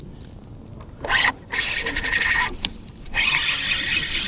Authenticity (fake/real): real